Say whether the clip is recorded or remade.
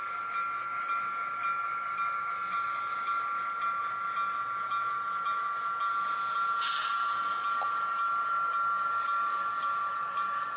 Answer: recorded